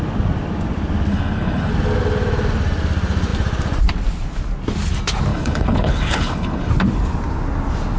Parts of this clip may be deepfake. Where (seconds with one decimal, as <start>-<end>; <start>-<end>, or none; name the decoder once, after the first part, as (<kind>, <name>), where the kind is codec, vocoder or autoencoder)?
1.1-1.7 (codec, HILCodec); 5.3-6.7